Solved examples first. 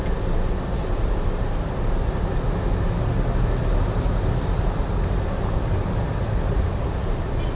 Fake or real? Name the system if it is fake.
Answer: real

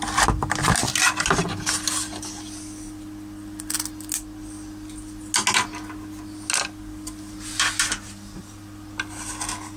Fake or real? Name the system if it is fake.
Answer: real